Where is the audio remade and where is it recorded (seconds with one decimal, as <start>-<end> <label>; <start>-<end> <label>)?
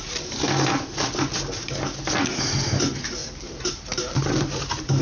0.0-5.0 recorded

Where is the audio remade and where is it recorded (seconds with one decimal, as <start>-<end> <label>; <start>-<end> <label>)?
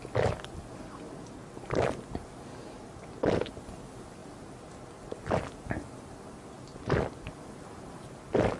0.0-8.6 recorded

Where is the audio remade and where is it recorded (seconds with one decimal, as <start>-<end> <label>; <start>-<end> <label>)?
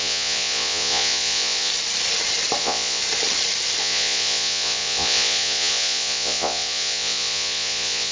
0.0-1.7 remade; 1.7-2.6 recorded; 2.6-3.0 remade; 3.0-3.8 recorded; 3.8-8.1 remade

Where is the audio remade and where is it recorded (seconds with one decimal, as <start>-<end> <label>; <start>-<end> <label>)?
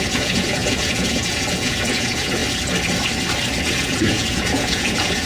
0.0-2.4 remade; 2.4-3.6 recorded; 3.6-5.3 remade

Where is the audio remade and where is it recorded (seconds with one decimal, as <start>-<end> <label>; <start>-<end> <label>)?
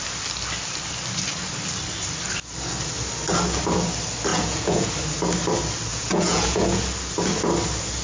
0.0-4.3 recorded; 4.3-4.9 remade; 4.9-5.9 recorded; 5.9-6.8 remade; 6.8-8.0 recorded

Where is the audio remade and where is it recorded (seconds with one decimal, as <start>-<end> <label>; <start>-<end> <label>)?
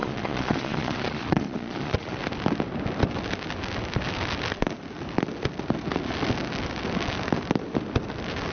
0.0-2.2 remade; 2.2-8.5 recorded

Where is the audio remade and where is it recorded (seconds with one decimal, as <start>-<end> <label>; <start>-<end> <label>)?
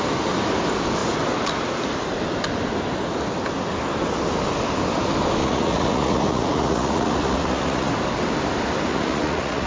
0.0-5.4 recorded; 5.4-7.9 remade; 7.9-8.9 recorded; 8.9-9.7 remade